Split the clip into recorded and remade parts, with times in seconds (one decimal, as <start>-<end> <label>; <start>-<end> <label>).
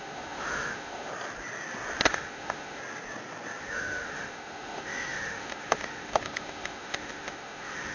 0.0-1.1 remade; 1.1-2.1 recorded; 2.1-2.8 remade; 2.8-3.6 recorded; 3.6-7.9 remade